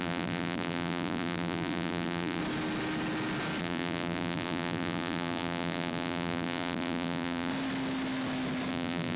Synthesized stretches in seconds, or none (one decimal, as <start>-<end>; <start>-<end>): 0.0-2.4; 3.6-7.5; 8.7-9.2